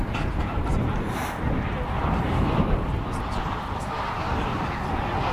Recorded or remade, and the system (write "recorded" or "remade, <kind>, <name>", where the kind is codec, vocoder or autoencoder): recorded